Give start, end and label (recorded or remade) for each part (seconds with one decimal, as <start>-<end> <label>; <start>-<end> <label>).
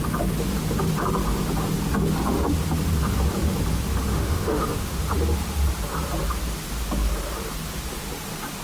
0.0-4.1 recorded; 4.1-5.0 remade; 5.0-8.6 recorded